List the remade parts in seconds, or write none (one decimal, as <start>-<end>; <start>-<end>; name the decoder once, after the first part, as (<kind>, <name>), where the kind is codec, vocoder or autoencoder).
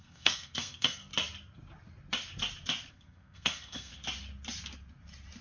0.0-1.1 (codec, SNAC); 2.9-3.9